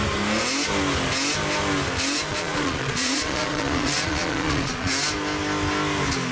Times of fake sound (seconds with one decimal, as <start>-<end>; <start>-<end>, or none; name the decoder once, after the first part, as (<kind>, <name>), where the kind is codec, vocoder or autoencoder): 2.3-4.9 (vocoder, Vocos)

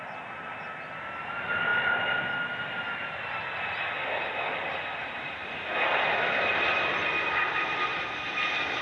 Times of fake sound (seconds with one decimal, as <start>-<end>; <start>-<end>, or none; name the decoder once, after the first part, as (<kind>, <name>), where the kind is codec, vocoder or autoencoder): 7.9-8.8 (vocoder, BigVGAN v2)